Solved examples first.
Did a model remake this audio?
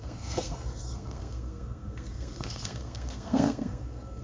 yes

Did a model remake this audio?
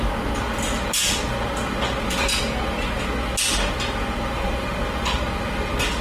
no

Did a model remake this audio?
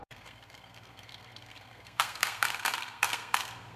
yes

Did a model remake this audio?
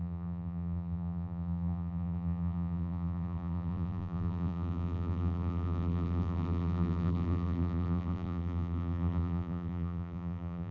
yes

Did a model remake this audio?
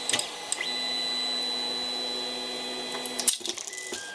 no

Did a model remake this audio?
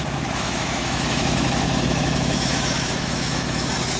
yes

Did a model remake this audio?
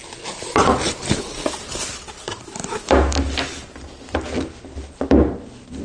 no